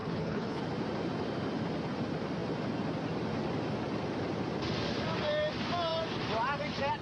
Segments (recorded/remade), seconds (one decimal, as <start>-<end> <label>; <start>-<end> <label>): 0.0-0.6 remade; 0.6-7.0 recorded